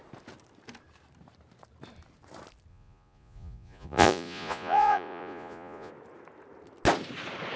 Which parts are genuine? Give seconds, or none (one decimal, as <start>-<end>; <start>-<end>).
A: 0.0-2.7; 5.9-7.6